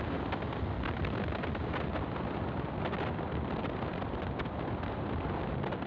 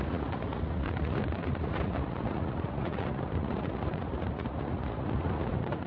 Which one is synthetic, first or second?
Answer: second